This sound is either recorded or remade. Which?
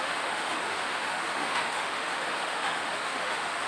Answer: remade